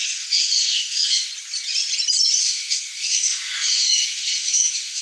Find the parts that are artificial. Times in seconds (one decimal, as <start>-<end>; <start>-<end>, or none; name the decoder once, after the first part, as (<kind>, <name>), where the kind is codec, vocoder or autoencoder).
0.0-1.3 (autoencoder, DAC-VAE); 2.4-5.0